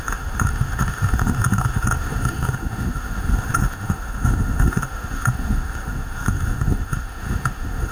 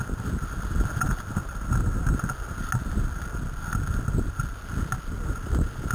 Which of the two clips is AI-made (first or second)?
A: first